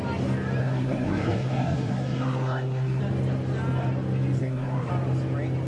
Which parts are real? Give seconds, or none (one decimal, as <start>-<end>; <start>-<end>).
0.0-0.6; 3.0-4.4; 4.9-5.7